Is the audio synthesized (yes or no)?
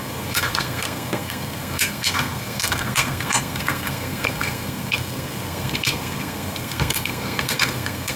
yes